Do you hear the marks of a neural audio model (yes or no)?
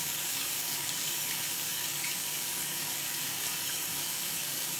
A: yes